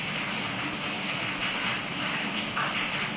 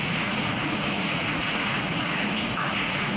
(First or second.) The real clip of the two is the first